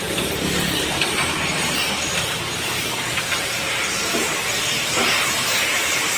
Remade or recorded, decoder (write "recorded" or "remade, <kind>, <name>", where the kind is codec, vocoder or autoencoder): remade, vocoder, BigVGAN v2